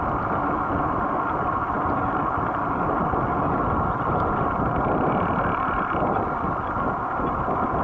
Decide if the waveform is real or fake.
real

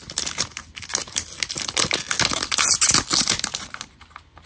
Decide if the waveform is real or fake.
real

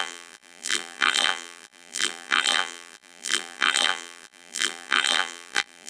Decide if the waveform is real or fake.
fake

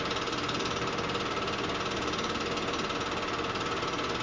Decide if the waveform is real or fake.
real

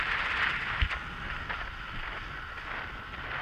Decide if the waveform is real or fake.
real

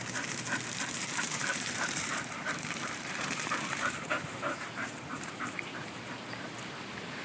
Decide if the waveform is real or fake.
fake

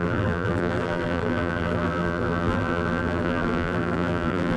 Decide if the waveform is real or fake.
fake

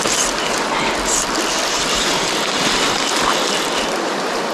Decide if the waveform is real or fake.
real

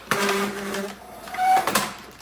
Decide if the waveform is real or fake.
fake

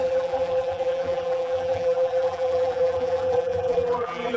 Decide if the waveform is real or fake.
fake